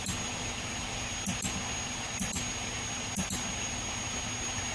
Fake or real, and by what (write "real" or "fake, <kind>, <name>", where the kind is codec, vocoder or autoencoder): real